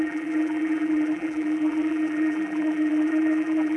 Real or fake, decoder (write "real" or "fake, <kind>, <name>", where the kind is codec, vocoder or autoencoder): fake, vocoder, BigVGAN v2